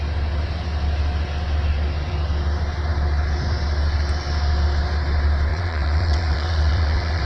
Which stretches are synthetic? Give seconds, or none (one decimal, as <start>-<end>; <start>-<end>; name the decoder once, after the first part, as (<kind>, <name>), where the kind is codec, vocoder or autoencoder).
5.5-7.2 (vocoder, WaveNeXt)